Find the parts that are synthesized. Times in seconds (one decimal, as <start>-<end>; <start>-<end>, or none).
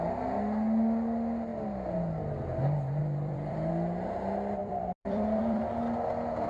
3.0-3.7; 4.6-5.7